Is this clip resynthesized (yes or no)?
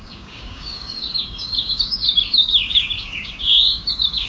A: yes